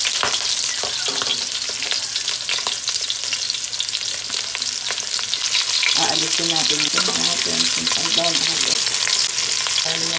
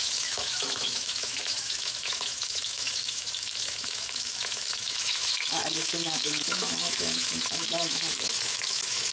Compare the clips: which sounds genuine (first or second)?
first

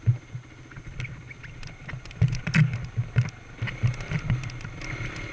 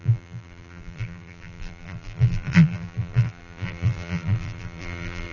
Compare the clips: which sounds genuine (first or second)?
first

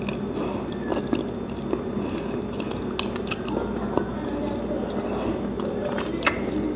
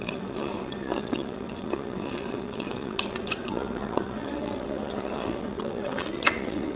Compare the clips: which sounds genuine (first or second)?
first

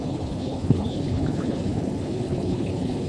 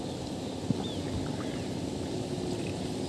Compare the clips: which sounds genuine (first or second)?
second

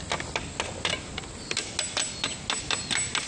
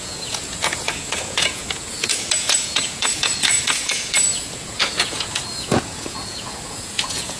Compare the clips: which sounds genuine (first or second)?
first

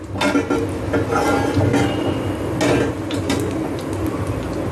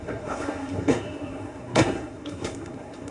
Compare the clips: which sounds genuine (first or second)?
first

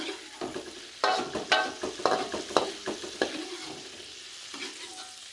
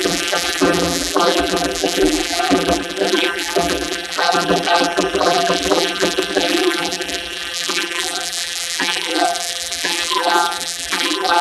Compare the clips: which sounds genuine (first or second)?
first